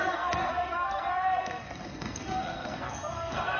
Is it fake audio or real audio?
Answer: fake